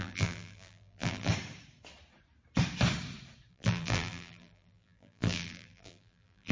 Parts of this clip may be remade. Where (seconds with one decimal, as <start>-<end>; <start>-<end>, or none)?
0.0-1.3; 3.5-6.5